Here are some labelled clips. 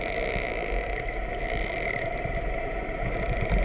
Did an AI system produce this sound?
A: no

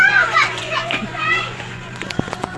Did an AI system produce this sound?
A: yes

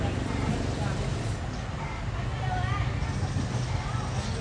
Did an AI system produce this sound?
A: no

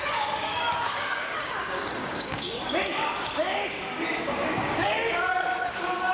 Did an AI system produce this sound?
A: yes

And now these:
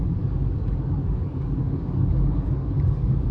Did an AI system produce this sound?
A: yes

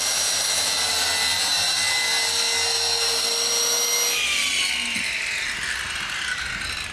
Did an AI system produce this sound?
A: no